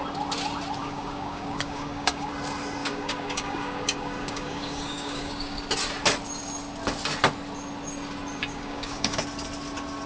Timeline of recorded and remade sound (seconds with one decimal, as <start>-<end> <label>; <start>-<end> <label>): 0.0-0.8 recorded; 0.8-2.3 remade; 2.3-2.8 recorded; 2.8-5.6 remade; 5.6-8.4 recorded; 8.4-9.2 remade; 9.2-10.1 recorded